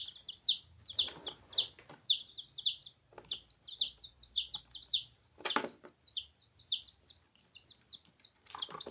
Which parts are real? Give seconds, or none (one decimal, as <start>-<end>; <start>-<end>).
0.0-2.1

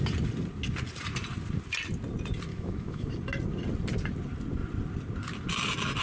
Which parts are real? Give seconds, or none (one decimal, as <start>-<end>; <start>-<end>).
0.0-2.5; 3.1-6.0

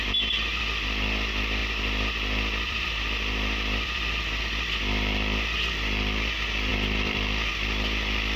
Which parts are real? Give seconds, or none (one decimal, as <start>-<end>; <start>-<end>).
0.0-1.6; 4.4-6.7; 7.5-8.4

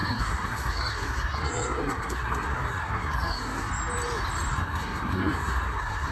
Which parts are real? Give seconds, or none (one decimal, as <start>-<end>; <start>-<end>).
3.7-4.5

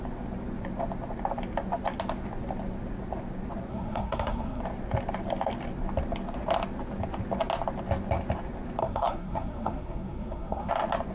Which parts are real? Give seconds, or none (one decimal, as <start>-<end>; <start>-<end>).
0.0-3.7; 4.6-8.8; 10.7-11.1

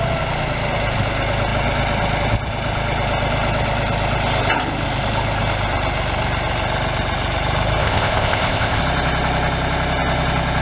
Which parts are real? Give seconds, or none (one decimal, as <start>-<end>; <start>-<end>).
0.0-7.8; 8.8-10.6

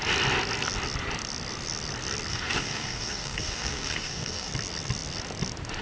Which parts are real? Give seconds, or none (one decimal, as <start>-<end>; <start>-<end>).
0.0-2.3; 4.5-5.8

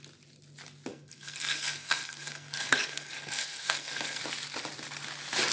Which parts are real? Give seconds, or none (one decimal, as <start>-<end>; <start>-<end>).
0.0-0.9; 4.2-5.5